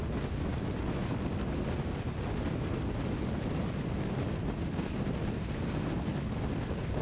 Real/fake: real